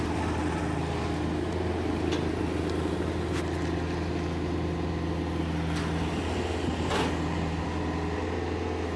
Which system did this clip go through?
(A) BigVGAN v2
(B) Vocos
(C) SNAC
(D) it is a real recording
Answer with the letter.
D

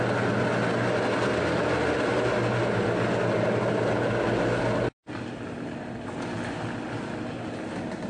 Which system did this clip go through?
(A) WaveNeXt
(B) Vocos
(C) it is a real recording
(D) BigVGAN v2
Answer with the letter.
C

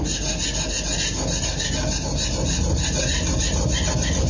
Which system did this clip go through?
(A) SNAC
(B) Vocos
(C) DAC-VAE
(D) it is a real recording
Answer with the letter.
D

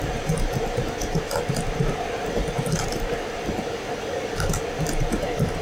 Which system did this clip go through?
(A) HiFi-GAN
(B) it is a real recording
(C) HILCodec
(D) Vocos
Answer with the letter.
B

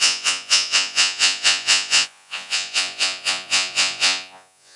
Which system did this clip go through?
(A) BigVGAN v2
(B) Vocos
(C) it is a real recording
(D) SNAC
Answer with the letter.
B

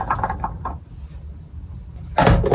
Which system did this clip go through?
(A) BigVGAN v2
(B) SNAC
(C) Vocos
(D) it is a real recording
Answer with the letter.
D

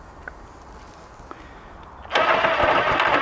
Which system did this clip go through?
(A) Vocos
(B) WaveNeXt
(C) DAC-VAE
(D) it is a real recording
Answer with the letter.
D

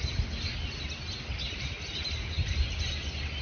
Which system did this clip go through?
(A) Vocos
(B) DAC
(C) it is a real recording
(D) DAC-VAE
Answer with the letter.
C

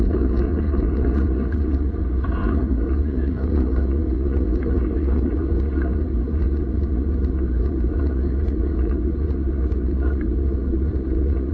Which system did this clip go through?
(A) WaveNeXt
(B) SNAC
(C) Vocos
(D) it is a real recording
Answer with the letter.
C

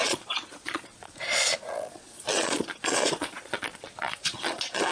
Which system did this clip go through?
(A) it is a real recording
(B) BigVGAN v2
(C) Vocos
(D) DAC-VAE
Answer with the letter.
C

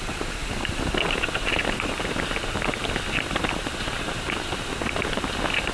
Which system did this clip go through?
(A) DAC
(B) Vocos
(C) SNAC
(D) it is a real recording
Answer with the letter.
D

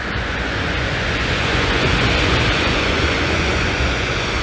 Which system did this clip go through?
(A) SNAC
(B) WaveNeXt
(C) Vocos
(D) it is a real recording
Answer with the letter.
C